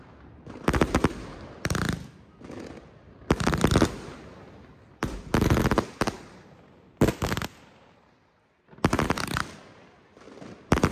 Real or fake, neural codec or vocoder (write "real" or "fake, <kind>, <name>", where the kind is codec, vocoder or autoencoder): real